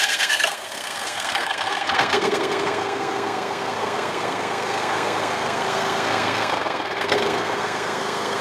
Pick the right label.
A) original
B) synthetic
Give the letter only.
B